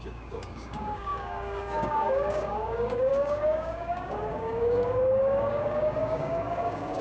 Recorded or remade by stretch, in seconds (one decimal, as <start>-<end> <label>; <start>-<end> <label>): 0.0-7.0 remade